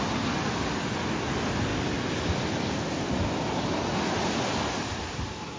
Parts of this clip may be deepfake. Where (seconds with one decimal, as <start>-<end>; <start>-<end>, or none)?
none